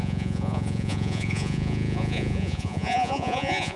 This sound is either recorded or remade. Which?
remade